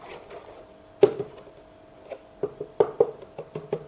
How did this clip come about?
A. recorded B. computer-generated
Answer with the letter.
A